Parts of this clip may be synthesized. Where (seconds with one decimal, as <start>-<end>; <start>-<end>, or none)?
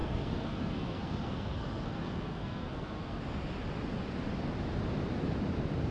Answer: 0.0-3.2